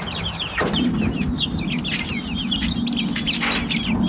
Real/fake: real